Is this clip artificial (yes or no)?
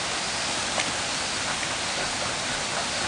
no